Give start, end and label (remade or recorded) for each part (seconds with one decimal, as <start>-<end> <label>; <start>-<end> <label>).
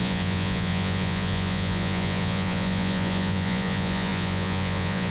0.0-5.1 remade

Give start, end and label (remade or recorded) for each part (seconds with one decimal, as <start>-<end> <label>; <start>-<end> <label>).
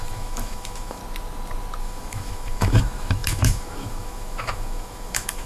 0.0-1.0 remade; 1.0-1.8 recorded; 1.8-5.5 remade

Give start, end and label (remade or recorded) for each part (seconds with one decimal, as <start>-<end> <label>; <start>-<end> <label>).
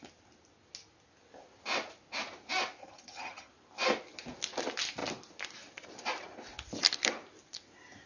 0.0-2.8 recorded; 2.8-3.5 remade; 3.5-8.1 recorded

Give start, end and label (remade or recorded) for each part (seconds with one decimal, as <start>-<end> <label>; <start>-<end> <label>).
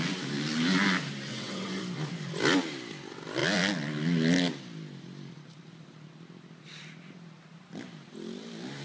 0.0-1.3 recorded; 1.3-1.8 remade; 1.8-8.8 recorded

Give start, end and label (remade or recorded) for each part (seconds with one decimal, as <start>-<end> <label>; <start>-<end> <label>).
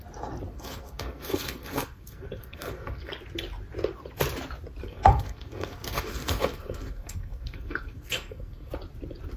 0.0-0.5 recorded; 0.5-3.1 remade; 3.1-4.8 recorded; 4.8-8.7 remade; 8.7-9.4 recorded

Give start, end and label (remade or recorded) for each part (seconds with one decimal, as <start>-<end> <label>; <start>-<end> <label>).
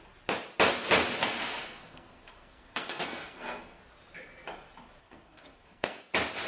0.0-1.2 recorded; 1.2-3.8 remade; 3.8-5.0 recorded; 5.0-6.1 remade; 6.1-6.5 recorded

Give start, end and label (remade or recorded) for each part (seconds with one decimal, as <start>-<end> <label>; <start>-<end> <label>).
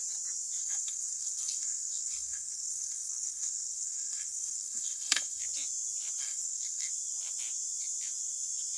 0.0-0.6 recorded; 0.6-5.4 remade; 5.4-6.2 recorded; 6.2-6.9 remade; 6.9-8.8 recorded